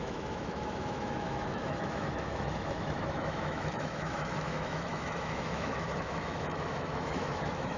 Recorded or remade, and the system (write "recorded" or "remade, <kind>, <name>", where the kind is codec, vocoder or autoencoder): remade, autoencoder, DAC-VAE